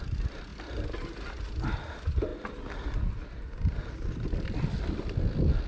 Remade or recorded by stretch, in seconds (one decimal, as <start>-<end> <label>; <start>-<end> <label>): 0.0-5.7 recorded

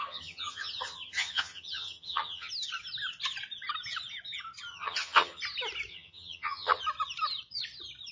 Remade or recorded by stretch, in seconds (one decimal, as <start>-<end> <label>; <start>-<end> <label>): 0.0-2.5 remade; 2.5-4.7 recorded; 4.7-5.4 remade; 5.4-5.9 recorded; 5.9-6.8 remade; 6.8-8.1 recorded